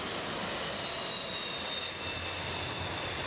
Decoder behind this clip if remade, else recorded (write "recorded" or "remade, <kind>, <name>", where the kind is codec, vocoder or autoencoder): recorded